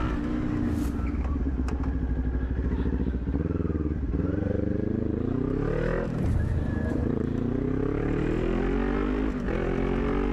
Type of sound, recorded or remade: recorded